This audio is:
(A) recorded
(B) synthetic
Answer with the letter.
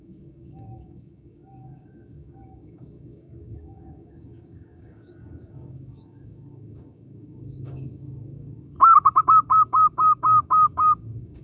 B